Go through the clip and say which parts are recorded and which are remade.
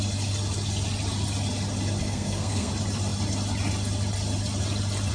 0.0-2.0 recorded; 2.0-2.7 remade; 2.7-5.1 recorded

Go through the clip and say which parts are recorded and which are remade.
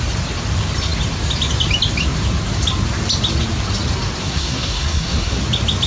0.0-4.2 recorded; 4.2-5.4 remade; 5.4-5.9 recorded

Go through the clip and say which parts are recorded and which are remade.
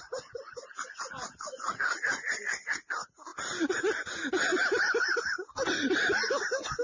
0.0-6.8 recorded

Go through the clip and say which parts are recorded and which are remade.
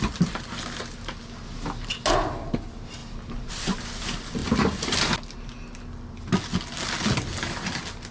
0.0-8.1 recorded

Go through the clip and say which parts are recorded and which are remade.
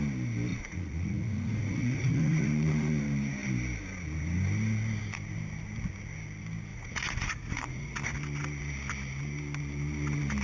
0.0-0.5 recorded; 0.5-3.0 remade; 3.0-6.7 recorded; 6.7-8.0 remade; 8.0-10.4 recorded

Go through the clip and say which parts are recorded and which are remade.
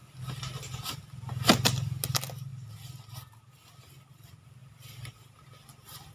0.0-6.1 recorded